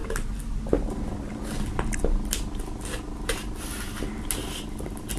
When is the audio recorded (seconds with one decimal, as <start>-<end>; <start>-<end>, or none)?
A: 0.0-5.2